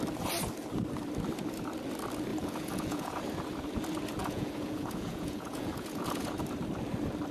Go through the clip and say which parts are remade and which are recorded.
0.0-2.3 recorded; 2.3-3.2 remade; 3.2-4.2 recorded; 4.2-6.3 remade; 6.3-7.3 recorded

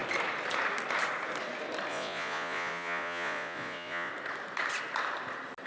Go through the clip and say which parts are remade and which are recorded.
0.0-1.9 recorded; 1.9-4.1 remade; 4.1-5.7 recorded